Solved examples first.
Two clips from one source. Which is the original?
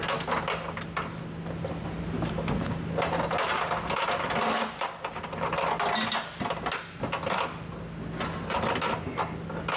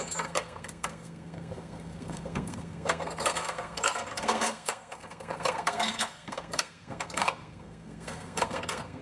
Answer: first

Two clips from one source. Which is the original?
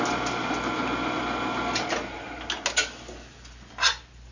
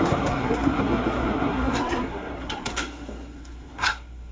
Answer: first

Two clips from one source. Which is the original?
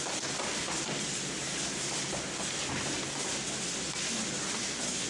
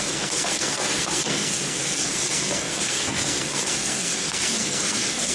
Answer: first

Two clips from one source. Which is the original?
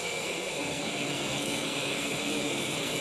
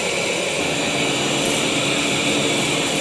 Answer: second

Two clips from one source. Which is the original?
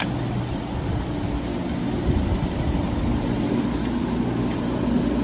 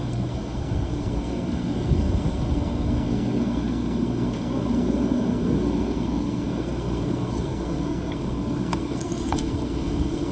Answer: first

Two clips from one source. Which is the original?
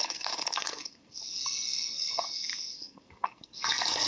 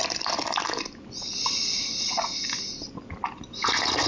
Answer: second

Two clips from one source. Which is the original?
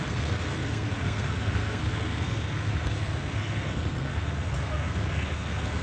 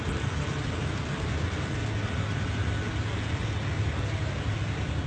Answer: second